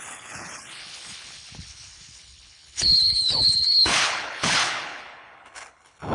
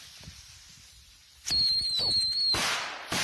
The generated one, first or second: first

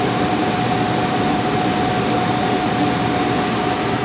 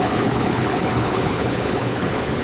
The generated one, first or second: second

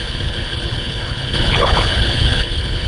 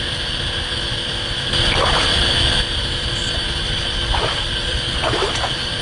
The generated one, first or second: first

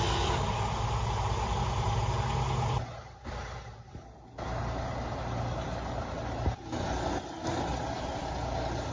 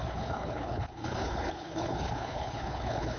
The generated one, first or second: second